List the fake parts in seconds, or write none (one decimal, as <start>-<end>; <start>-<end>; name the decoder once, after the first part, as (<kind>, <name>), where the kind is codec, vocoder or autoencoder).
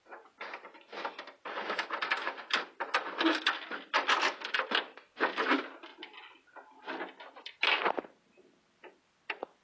none